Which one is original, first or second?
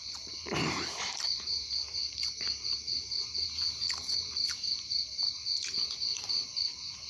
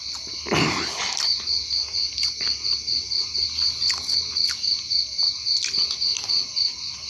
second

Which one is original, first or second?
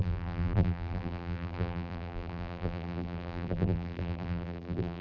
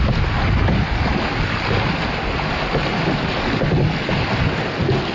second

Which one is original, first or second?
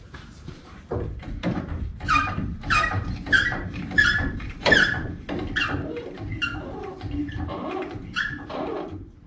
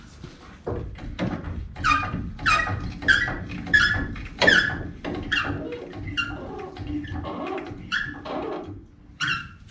second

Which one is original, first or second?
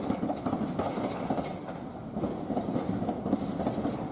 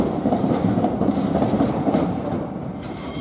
first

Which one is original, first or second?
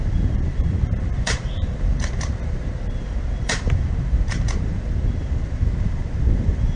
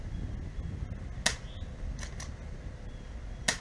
second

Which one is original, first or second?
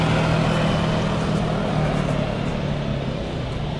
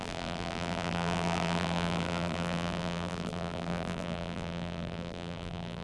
first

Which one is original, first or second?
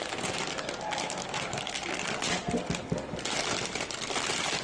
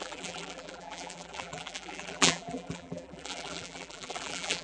first